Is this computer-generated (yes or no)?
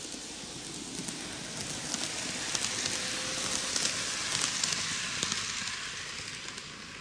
no